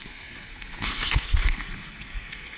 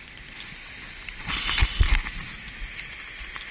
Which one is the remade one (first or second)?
first